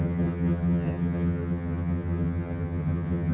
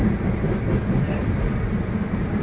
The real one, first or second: second